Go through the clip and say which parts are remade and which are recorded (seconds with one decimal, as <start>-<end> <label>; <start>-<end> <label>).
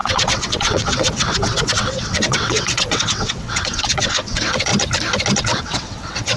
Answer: 0.0-4.7 remade; 4.7-5.4 recorded; 5.4-6.4 remade